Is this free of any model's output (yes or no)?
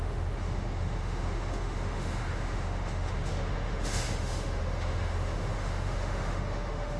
no